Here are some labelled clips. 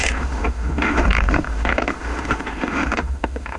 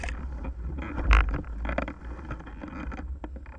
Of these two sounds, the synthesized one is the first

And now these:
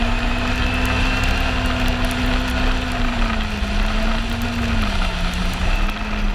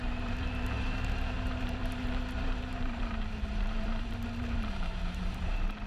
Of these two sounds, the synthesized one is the second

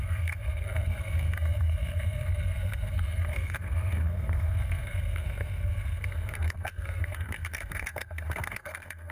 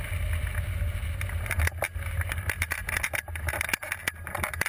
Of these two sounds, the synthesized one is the first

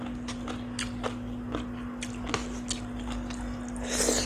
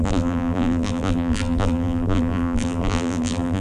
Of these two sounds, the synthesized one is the second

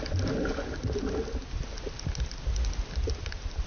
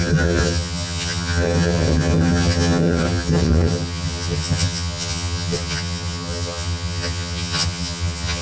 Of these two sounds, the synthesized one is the second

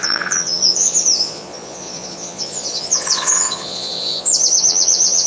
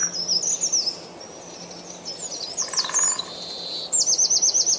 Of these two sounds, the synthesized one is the first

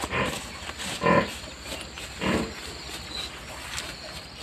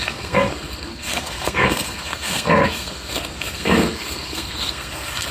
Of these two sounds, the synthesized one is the second